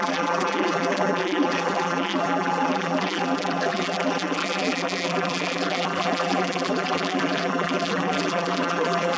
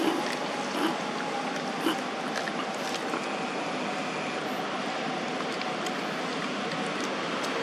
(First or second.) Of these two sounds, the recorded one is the second